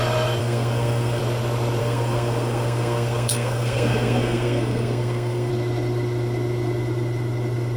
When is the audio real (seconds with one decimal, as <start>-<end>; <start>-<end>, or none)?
0.0-0.4; 1.2-1.8; 5.5-7.8